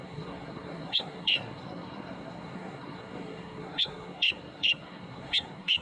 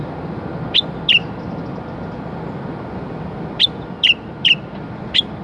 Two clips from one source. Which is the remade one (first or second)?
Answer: first